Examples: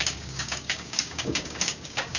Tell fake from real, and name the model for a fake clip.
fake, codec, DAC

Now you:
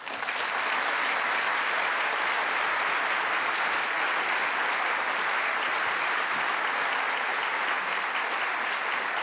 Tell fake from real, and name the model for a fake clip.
real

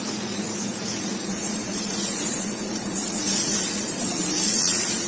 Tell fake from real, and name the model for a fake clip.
fake, vocoder, Vocos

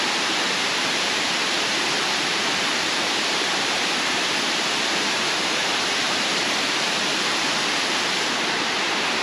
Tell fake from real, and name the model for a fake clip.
fake, vocoder, BigVGAN v2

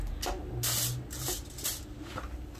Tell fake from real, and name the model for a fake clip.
real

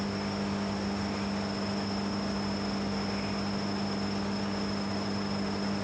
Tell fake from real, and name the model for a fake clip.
real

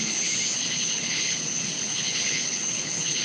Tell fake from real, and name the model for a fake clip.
fake, codec, HILCodec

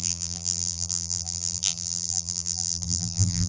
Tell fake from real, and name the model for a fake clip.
fake, vocoder, BigVGAN v2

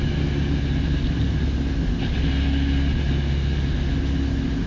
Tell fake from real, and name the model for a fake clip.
real